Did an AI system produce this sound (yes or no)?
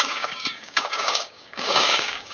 yes